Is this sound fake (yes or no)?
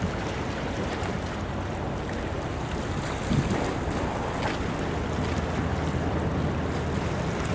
no